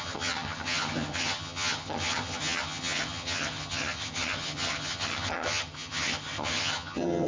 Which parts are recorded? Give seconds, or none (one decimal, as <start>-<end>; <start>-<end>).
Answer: none